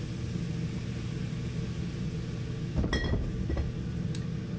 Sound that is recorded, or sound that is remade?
recorded